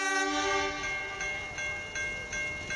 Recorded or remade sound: recorded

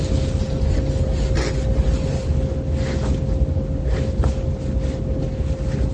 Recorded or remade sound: recorded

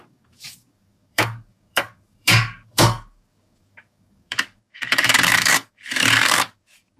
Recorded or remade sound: remade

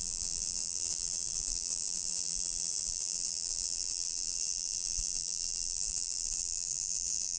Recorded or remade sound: remade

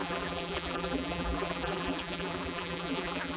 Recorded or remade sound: remade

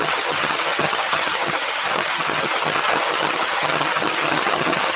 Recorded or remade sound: remade